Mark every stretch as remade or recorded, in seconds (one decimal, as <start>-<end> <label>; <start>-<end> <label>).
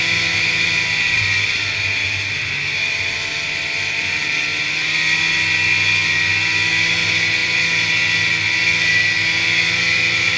0.0-10.4 recorded